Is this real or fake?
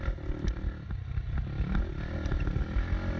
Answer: real